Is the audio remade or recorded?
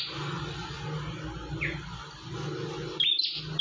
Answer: recorded